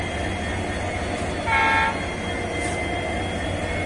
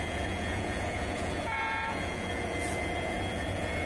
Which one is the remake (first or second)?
second